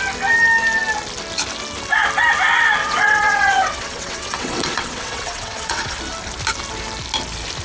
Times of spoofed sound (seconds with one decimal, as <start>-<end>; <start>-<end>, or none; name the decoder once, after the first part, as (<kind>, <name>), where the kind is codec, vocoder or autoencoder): 2.8-6.0 (vocoder, WaveNeXt)